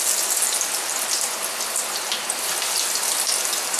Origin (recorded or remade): recorded